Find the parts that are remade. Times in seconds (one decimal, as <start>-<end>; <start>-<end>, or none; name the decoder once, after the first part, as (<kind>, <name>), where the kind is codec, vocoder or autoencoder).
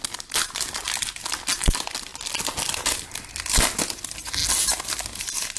none